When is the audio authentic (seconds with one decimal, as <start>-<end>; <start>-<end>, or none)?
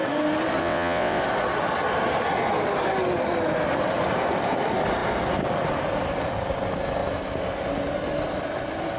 0.0-0.6; 1.2-9.0